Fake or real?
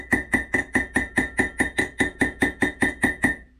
real